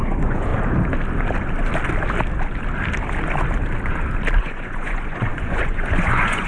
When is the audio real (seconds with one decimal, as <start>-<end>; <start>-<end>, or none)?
0.5-4.4